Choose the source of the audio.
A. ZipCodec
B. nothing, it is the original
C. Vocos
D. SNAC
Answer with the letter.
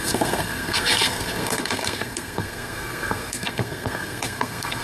D